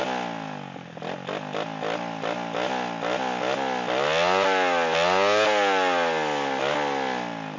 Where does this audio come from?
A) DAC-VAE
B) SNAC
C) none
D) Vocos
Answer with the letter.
C